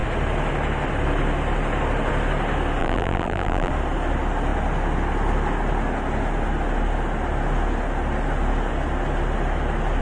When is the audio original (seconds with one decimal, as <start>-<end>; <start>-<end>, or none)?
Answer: 0.0-2.8; 3.7-10.0